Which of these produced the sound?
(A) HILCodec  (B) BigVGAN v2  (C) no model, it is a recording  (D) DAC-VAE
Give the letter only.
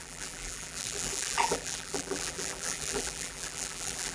B